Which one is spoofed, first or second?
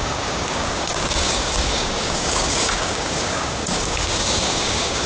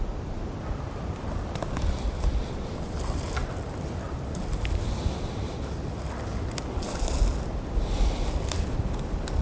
first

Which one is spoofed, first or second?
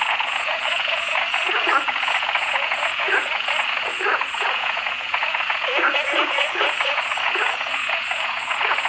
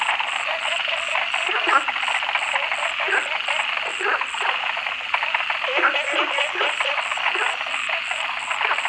first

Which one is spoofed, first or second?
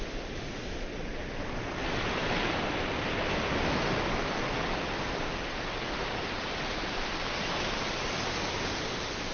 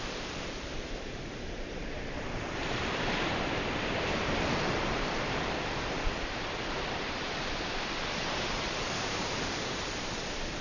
second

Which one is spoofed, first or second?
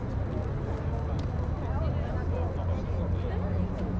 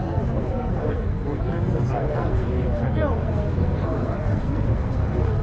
second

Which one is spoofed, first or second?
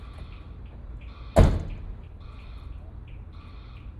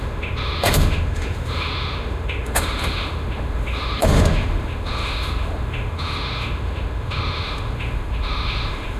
second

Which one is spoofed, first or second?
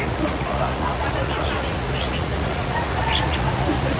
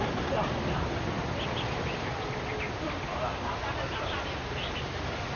first